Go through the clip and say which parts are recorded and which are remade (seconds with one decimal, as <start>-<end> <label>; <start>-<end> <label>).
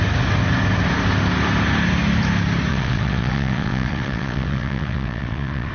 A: 0.0-2.7 recorded; 2.7-5.7 remade